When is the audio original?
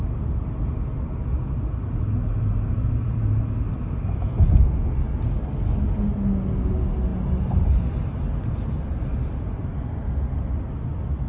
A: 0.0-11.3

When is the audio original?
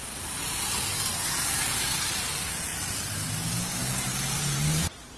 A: 0.0-2.7; 3.3-3.8